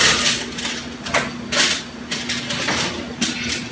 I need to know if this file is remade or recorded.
recorded